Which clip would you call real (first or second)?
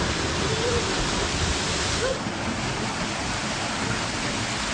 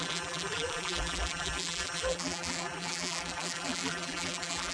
first